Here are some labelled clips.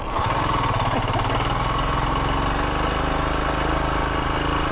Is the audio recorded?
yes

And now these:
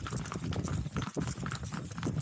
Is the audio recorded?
yes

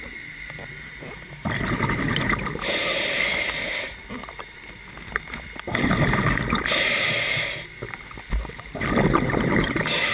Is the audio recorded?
yes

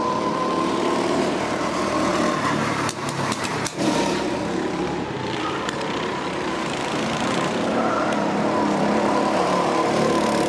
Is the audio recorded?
no